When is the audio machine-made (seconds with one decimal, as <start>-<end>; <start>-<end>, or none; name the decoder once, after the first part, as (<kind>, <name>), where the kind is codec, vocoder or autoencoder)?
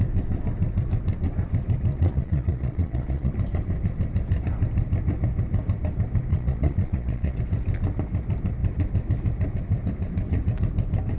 1.9-3.3 (vocoder, Vocos); 6.3-7.4